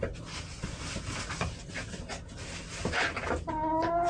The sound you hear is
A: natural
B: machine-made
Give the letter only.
A